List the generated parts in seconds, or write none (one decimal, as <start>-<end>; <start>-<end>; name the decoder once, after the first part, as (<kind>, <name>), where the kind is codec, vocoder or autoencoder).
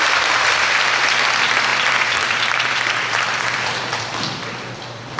0.0-5.2 (vocoder, BigVGAN v2)